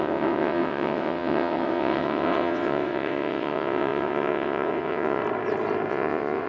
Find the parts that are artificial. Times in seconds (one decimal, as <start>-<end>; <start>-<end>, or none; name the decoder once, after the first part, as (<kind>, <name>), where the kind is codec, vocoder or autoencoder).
0.0-5.2 (vocoder, WaveNeXt); 5.9-6.5